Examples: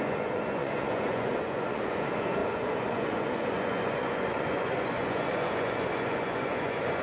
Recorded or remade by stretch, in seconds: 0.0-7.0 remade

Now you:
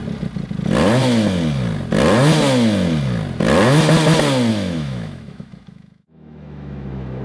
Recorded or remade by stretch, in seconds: 0.0-4.5 recorded; 4.5-7.2 remade

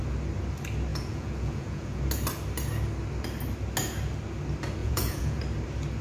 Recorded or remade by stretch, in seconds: 0.0-0.9 recorded; 0.9-2.0 remade; 2.0-4.8 recorded; 4.8-5.4 remade; 5.4-6.0 recorded